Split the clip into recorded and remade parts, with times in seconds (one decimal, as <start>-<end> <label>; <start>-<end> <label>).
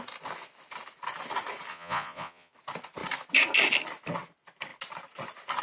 0.0-1.7 recorded; 1.7-2.5 remade; 2.5-5.6 recorded